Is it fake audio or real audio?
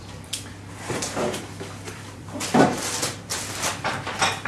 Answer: fake